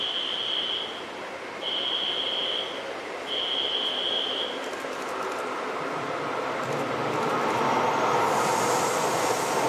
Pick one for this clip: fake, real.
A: real